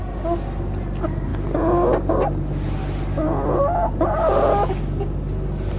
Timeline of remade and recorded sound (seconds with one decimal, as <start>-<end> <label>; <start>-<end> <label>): 0.0-5.8 recorded